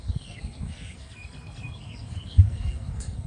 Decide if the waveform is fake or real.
fake